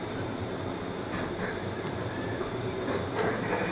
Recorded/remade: remade